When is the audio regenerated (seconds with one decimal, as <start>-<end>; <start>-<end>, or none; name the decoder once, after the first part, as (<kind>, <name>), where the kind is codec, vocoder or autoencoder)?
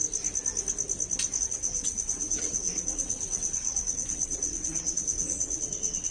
1.4-6.1 (vocoder, WaveNeXt)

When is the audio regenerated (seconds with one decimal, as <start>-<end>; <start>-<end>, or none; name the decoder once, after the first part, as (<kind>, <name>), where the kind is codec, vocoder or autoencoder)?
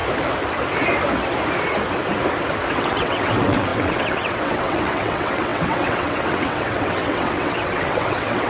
2.7-8.5 (vocoder, WaveNeXt)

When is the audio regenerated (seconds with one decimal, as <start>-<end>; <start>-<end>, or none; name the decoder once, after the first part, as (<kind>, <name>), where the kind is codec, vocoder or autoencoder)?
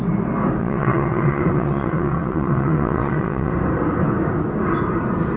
0.6-3.5 (vocoder, WaveNeXt)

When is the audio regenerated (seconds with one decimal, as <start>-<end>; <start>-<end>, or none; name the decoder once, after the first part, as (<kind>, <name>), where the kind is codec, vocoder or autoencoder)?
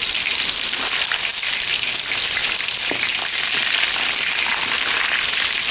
none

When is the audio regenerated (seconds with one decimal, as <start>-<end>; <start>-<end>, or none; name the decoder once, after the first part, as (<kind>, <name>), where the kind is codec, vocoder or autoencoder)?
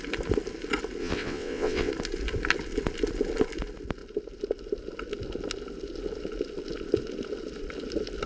1.0-1.9 (vocoder, WaveNeXt)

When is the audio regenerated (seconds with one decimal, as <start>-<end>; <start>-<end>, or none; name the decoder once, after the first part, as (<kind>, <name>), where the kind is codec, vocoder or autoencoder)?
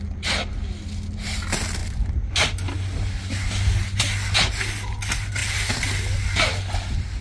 none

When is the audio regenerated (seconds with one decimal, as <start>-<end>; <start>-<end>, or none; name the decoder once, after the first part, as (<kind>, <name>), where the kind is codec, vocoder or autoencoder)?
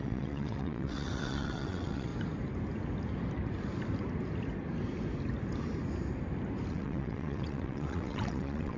0.0-2.1 (vocoder, WaveNeXt); 6.7-8.8